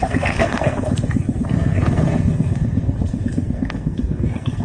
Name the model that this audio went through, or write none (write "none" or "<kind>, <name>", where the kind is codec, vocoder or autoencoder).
codec, SNAC